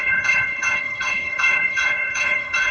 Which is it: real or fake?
fake